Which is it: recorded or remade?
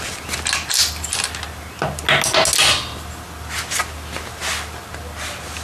recorded